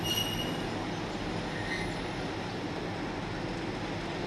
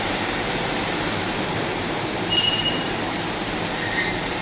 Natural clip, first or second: first